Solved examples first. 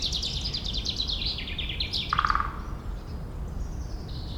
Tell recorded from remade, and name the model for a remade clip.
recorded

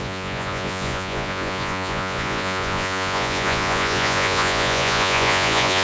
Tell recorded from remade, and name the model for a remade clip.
remade, vocoder, Vocos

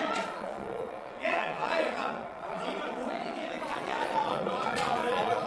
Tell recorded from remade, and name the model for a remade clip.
remade, vocoder, Vocos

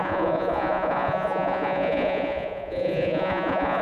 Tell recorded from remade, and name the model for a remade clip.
remade, vocoder, Vocos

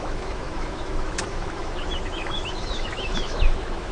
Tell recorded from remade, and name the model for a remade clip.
remade, autoencoder, DAC-VAE